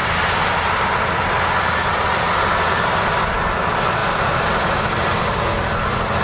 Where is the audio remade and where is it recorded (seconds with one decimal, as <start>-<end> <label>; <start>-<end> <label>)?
0.0-6.2 recorded